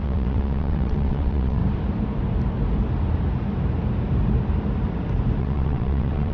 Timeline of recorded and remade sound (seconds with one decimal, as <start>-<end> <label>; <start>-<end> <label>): 0.0-1.6 remade; 1.6-5.4 recorded; 5.4-6.3 remade